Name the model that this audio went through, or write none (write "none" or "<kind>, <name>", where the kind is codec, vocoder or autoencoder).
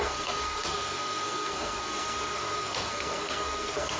codec, SNAC